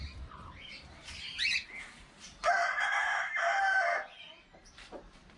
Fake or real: fake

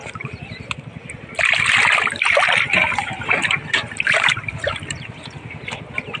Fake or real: fake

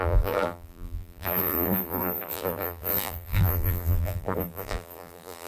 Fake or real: fake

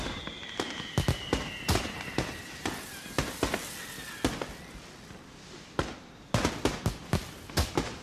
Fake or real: real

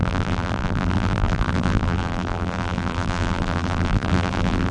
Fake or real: fake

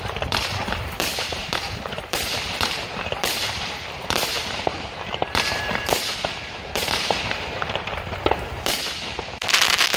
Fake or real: fake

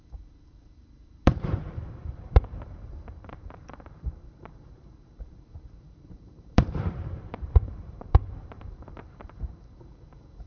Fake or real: fake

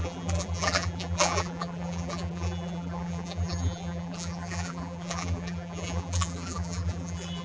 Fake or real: fake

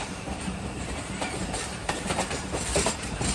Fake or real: fake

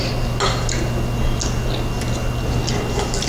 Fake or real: real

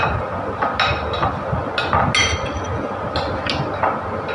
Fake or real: real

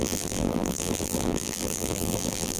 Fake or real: fake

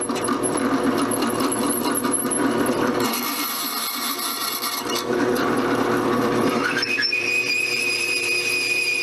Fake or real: fake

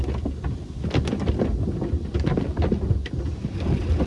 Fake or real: real